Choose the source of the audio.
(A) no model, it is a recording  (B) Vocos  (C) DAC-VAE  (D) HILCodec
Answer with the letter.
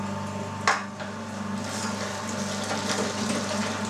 A